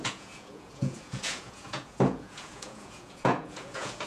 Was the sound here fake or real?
fake